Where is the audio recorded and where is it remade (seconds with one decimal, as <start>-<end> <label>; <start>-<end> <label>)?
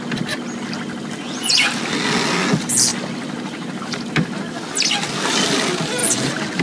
0.0-1.2 recorded; 1.2-1.7 remade; 1.7-6.6 recorded